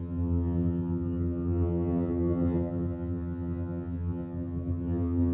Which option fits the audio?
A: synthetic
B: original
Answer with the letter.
A